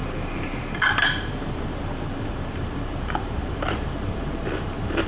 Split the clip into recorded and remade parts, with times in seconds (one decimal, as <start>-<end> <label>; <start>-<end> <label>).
0.0-5.1 remade